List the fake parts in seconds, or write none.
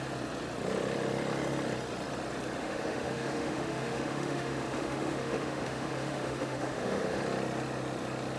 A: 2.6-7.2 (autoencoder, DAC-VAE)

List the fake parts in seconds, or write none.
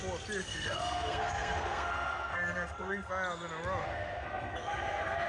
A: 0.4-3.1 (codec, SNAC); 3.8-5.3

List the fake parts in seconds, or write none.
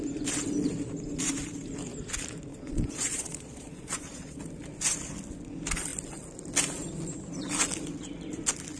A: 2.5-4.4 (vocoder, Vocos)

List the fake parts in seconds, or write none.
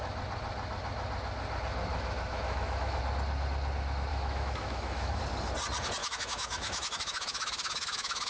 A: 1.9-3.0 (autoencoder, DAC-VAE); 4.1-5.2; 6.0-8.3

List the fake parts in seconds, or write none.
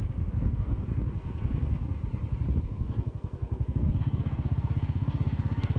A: 0.0-2.0 (codec, SNAC); 2.6-5.8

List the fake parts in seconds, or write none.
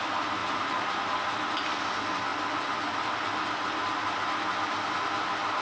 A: 0.4-1.0 (vocoder, BigVGAN v2)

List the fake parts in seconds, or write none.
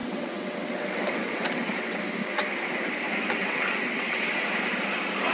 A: 0.0-2.0 (vocoder, WaveNeXt); 3.4-4.3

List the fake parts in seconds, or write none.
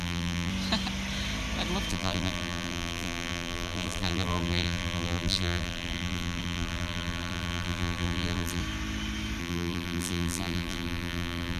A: 0.0-0.5 (vocoder, BigVGAN v2); 1.9-8.6; 9.4-11.6